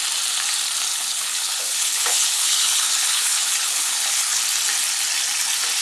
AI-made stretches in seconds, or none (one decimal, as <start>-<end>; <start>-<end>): 0.9-4.4